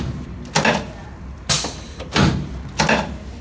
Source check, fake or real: real